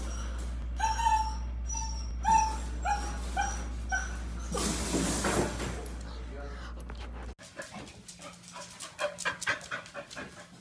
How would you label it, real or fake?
real